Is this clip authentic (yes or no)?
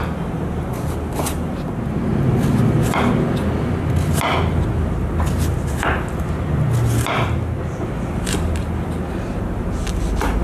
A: yes